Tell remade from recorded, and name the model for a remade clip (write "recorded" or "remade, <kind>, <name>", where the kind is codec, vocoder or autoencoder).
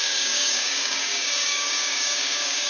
remade, codec, DAC